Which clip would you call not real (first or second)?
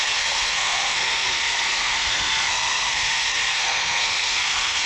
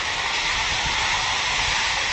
first